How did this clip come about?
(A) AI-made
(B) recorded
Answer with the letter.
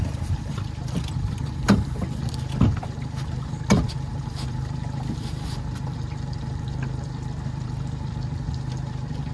A